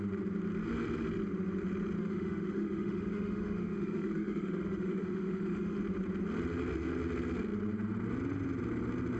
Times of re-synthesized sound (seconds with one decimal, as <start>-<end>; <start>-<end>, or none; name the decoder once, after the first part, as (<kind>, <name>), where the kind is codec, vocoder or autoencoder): 2.0-5.8 (autoencoder, DAC-VAE)